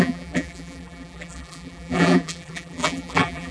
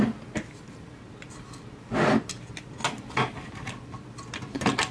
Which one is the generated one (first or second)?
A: first